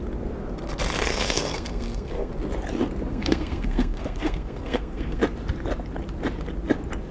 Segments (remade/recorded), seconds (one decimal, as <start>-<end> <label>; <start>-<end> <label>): 0.0-1.1 recorded; 1.1-2.3 remade; 2.3-3.1 recorded; 3.1-5.2 remade; 5.2-7.1 recorded

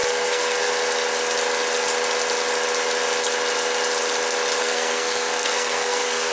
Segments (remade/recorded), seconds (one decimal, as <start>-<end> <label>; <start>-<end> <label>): 0.0-0.7 remade; 0.7-4.6 recorded; 4.6-6.3 remade